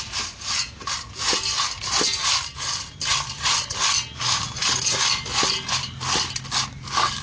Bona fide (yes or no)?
yes